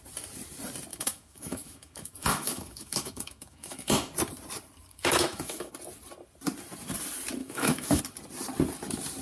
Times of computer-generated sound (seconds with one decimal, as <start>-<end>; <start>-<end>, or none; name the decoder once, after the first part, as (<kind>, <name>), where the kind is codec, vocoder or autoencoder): 0.9-4.1 (autoencoder, DAC-VAE); 4.9-5.7; 7.4-8.0